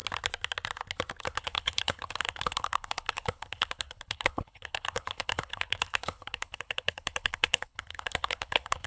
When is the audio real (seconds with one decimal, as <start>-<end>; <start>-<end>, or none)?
0.0-1.2

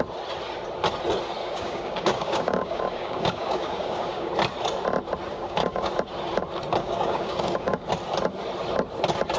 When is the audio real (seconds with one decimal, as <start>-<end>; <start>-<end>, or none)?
0.0-1.4; 4.3-5.3; 5.9-6.8; 7.9-9.4

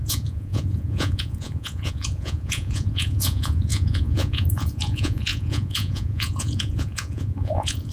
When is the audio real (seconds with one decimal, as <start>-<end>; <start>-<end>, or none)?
none

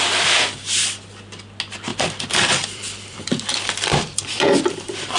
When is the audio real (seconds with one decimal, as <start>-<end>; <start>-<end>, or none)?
0.0-1.9

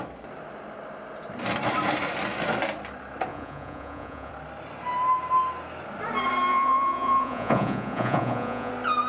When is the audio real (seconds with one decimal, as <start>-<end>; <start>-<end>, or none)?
0.0-3.3; 4.3-6.5; 8.7-9.1

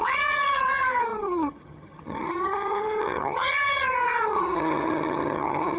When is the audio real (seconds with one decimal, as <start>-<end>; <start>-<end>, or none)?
none

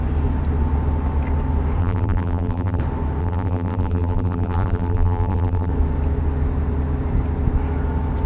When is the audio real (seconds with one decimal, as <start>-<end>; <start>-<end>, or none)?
0.0-1.8; 2.8-3.2; 5.7-8.3